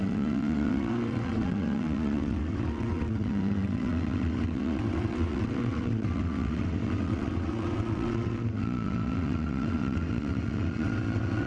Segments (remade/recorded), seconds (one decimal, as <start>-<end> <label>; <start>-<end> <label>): 0.0-11.5 remade